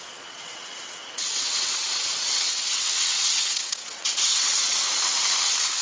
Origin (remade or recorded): remade